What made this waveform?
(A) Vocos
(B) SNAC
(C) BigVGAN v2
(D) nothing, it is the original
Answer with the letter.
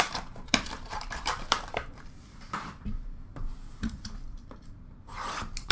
C